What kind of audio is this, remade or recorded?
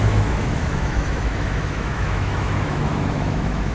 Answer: remade